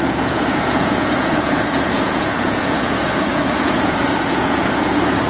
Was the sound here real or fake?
fake